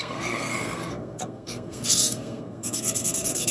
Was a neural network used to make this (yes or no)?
yes